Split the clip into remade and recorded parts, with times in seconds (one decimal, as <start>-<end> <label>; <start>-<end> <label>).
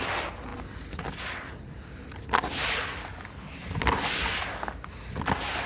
0.0-5.7 recorded